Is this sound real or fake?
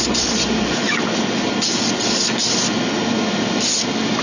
real